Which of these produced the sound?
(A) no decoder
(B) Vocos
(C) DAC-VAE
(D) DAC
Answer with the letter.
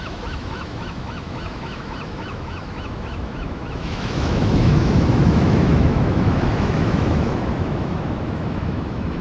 C